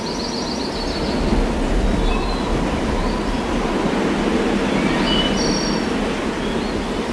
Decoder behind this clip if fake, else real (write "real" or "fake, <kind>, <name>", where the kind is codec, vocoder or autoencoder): real